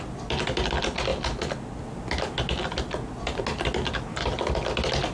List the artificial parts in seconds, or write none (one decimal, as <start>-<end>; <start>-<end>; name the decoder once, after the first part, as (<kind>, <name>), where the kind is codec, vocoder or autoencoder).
none